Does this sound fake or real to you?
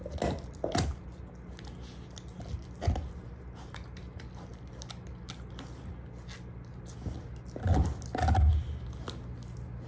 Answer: real